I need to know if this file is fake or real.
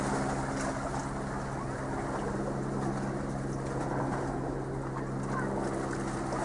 real